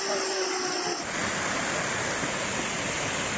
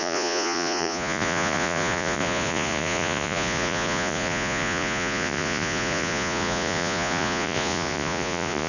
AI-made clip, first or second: second